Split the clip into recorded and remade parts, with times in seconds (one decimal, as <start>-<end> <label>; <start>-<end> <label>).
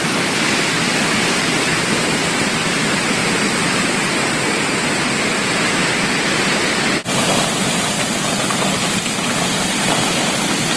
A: 0.0-10.8 recorded